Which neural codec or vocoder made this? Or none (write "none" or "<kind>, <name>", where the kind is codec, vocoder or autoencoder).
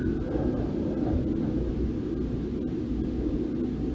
none